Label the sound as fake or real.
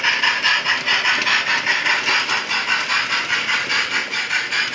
real